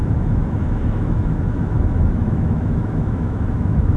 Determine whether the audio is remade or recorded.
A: remade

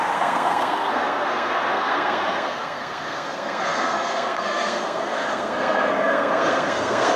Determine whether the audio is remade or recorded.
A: remade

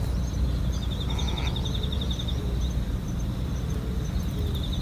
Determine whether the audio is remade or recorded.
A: recorded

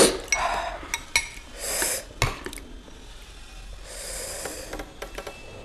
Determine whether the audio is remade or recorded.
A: recorded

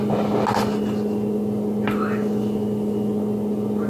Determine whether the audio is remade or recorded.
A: recorded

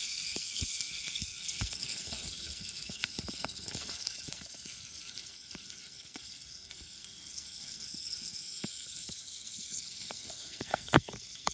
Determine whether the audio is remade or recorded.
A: remade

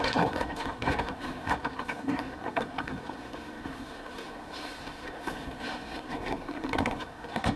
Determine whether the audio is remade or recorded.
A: remade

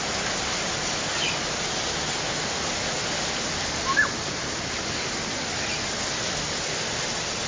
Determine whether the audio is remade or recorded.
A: recorded